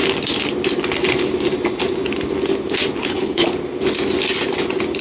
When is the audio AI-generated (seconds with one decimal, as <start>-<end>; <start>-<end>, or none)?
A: 3.0-3.5